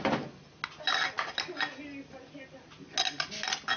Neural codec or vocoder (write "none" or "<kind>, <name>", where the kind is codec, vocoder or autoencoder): none